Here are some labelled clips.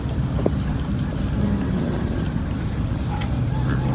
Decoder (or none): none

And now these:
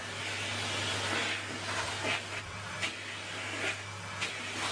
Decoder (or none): none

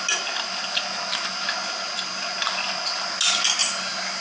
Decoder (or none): none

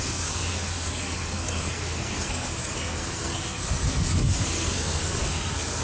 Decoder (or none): codec, SNAC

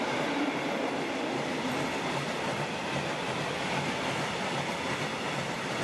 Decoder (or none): none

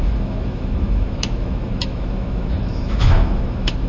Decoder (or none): autoencoder, DAC-VAE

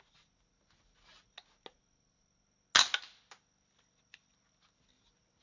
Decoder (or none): none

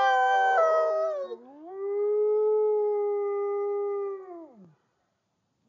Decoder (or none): none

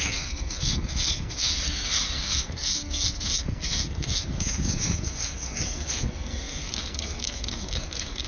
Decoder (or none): codec, SNAC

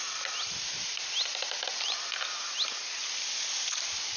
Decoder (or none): none